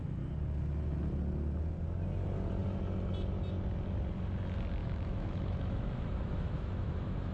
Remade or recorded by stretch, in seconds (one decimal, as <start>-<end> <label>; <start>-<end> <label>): 0.0-4.8 recorded; 4.8-7.3 remade